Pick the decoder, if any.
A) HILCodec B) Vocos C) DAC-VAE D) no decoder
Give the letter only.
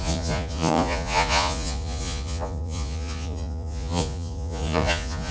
B